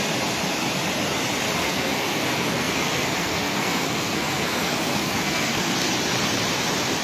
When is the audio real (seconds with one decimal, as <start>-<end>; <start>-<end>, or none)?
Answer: 0.0-1.6; 5.8-7.0